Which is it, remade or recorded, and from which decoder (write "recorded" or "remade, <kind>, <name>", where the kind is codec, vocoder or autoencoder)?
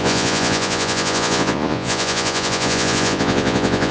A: remade, vocoder, Vocos